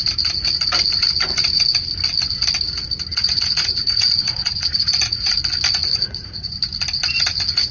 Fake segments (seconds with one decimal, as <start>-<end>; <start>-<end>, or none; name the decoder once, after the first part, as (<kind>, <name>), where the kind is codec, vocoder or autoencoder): 3.1-5.3 (vocoder, Vocos); 5.8-6.5